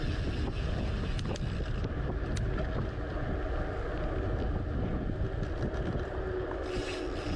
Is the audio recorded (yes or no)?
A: yes